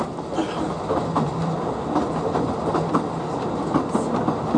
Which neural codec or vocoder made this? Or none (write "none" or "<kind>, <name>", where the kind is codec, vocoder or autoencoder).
none